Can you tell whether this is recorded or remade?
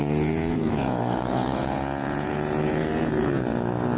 remade